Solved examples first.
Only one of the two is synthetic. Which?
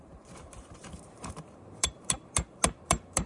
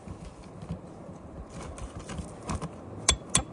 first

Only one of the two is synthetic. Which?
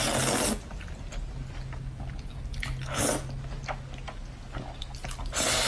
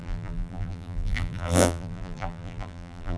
second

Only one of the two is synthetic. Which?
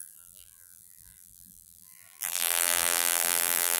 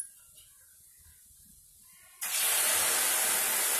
first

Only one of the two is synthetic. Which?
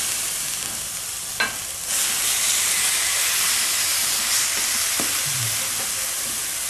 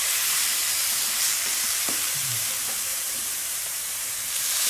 second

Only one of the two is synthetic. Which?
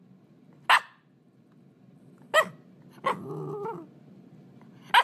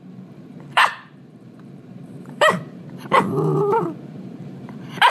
second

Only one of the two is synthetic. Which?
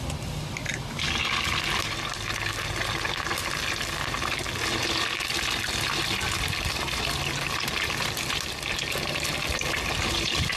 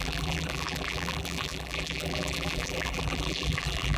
second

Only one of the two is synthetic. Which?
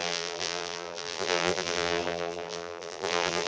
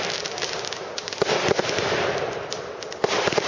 first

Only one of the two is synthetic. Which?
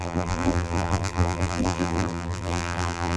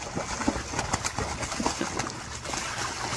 first